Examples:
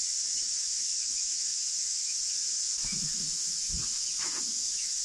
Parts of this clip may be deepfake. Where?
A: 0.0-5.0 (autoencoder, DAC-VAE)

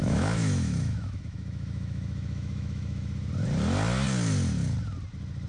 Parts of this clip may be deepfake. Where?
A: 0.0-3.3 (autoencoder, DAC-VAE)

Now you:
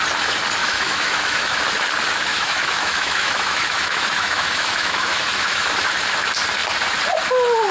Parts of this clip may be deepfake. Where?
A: 0.6-1.6 (autoencoder, DAC-VAE); 2.3-6.0

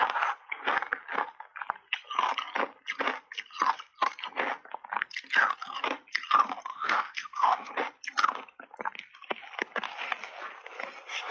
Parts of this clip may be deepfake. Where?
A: 6.7-7.7 (autoencoder, DAC-VAE)